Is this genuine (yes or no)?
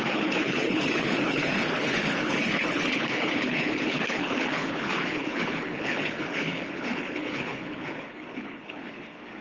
no